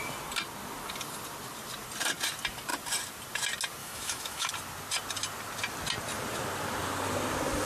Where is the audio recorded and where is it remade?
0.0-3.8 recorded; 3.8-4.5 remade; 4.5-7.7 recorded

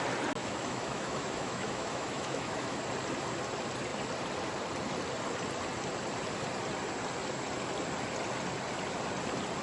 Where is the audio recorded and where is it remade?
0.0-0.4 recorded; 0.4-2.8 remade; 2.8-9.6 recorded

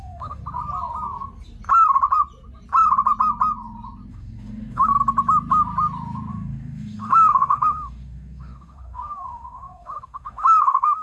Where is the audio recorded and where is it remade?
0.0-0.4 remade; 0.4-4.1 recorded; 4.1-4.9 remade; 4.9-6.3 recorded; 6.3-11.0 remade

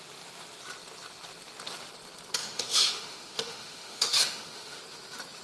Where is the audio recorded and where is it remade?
0.0-2.4 recorded; 2.4-4.8 remade; 4.8-5.4 recorded

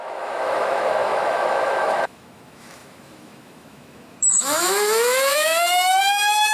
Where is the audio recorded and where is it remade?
0.0-6.5 remade

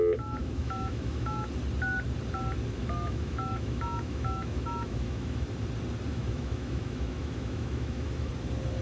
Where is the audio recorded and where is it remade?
0.0-0.4 recorded; 0.4-1.5 remade; 1.5-2.8 recorded; 2.8-5.4 remade; 5.4-6.1 recorded; 6.1-8.3 remade; 8.3-8.8 recorded